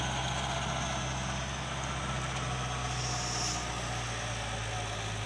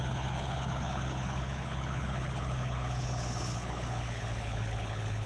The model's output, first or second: second